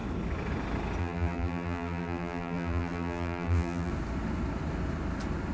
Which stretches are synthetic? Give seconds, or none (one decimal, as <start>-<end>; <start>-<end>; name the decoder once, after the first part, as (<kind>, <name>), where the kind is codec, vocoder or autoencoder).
1.0-3.9 (vocoder, BigVGAN v2)